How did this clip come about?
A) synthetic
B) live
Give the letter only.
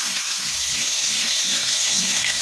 A